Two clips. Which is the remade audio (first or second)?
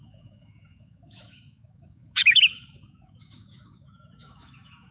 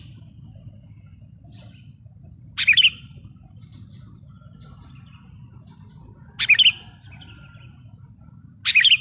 first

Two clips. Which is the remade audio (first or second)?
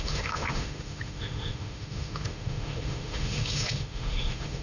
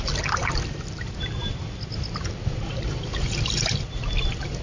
first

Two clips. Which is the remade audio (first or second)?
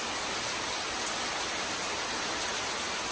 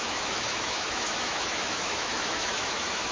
second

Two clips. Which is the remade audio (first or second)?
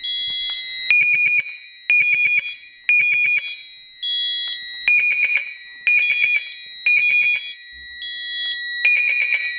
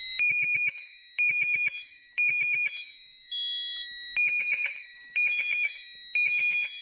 second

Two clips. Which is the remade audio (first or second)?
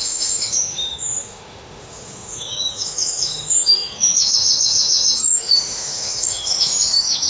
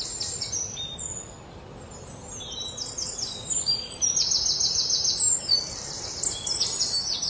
first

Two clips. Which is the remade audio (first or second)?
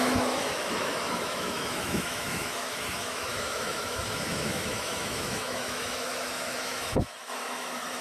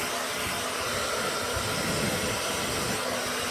first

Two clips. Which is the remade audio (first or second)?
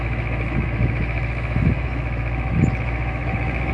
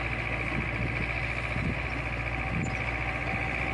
first